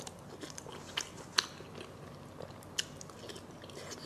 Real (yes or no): yes